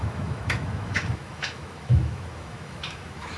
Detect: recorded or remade remade